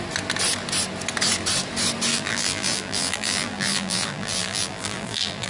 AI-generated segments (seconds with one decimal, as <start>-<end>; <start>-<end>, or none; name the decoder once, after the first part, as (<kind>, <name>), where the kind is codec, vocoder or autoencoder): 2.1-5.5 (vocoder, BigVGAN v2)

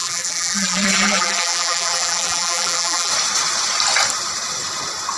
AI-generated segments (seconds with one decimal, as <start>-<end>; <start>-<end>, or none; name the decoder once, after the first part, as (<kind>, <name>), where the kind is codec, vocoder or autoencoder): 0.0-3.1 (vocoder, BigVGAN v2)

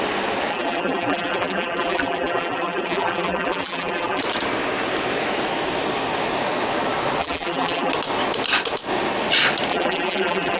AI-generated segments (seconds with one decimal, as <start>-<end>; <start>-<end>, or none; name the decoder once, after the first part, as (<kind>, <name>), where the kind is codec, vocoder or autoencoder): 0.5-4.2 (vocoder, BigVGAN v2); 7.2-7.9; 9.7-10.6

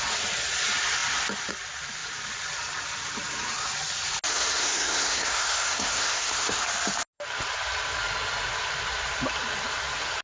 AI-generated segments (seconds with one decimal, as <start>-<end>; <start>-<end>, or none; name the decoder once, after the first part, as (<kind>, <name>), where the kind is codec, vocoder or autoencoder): 4.3-6.6 (codec, SNAC)

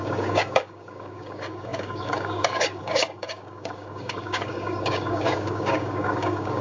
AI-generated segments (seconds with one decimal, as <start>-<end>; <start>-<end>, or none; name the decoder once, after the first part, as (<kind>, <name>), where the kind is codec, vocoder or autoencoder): 0.0-6.6 (codec, DAC)